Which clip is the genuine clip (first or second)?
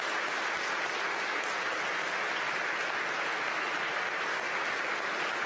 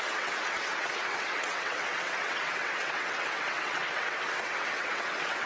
first